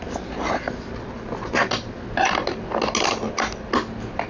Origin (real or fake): real